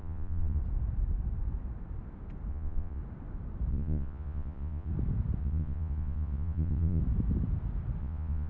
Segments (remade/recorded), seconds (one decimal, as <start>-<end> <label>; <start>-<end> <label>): 0.0-0.6 remade; 0.6-2.5 recorded; 2.5-3.0 remade; 3.0-3.7 recorded; 3.7-4.9 remade; 4.9-5.4 recorded; 5.4-7.0 remade; 7.0-8.0 recorded; 8.0-8.5 remade